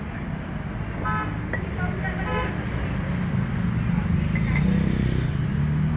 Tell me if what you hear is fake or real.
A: real